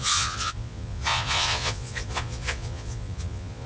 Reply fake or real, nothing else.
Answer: fake